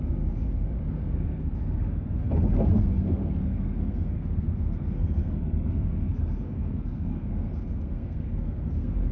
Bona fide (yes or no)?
no